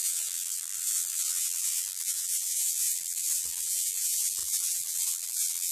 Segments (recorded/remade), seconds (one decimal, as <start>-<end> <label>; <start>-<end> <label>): 0.0-5.7 remade